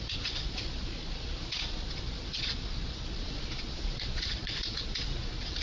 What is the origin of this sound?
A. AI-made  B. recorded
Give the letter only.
A